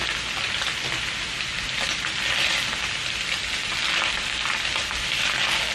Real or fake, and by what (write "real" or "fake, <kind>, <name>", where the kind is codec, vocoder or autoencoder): real